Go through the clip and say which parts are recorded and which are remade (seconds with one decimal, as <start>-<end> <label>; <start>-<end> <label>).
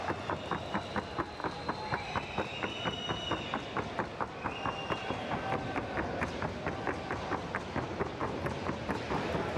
0.0-9.6 recorded